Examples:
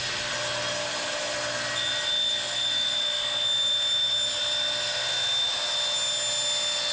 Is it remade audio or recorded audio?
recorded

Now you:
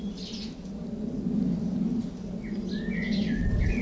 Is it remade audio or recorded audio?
recorded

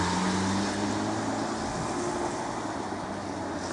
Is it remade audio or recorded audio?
recorded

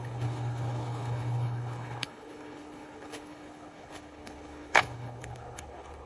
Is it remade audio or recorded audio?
remade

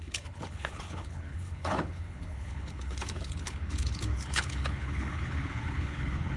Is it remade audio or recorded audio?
remade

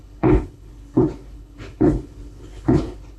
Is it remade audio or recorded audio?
remade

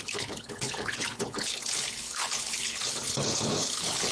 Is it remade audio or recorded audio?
remade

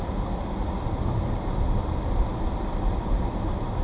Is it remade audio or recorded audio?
recorded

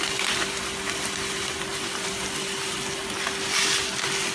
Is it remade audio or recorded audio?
recorded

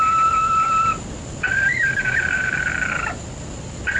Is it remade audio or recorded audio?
recorded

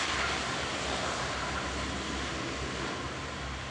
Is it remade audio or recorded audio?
recorded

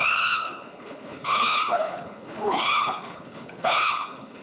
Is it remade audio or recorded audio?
remade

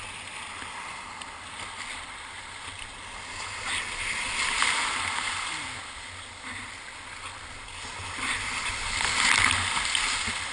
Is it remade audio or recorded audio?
recorded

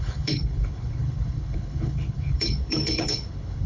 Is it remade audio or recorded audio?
remade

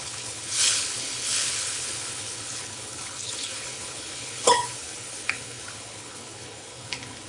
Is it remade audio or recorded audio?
remade